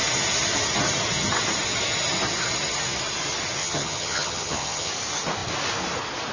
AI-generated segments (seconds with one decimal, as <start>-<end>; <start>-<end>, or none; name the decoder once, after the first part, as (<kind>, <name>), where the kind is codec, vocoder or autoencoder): 3.6-4.9 (vocoder, HiFi-GAN)